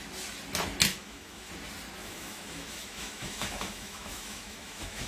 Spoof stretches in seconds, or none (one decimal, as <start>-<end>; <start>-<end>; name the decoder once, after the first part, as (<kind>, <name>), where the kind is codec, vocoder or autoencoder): 0.9-1.5 (autoencoder, DAC-VAE); 2.0-5.1